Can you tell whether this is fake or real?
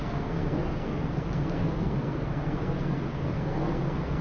fake